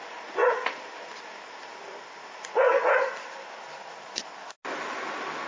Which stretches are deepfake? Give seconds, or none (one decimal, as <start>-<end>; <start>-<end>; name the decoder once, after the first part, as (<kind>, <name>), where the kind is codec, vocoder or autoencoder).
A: none